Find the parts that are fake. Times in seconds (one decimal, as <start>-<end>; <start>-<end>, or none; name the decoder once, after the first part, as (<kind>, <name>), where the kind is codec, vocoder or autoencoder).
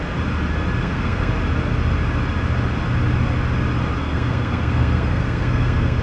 0.8-1.3 (codec, SNAC); 4.0-6.0